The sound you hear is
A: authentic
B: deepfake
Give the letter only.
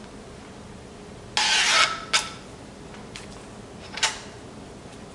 A